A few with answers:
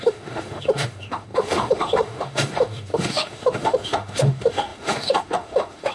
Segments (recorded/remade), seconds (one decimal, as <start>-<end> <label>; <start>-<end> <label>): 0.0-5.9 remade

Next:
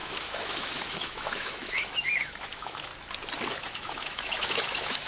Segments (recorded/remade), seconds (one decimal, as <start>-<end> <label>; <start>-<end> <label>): 0.0-2.9 remade; 2.9-3.5 recorded; 3.5-5.1 remade

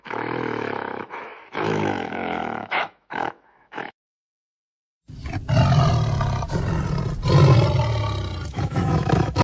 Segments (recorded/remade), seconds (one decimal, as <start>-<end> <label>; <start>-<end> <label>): 0.0-4.6 remade; 4.6-8.5 recorded; 8.5-9.4 remade

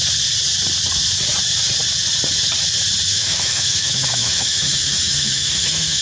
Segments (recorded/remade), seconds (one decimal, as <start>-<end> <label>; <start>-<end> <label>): 0.0-3.1 recorded; 3.1-6.0 remade

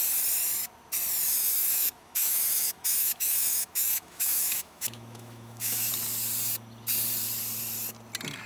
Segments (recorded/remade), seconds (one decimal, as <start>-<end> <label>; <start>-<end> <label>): 0.0-1.4 recorded; 1.4-5.9 remade; 5.9-8.5 recorded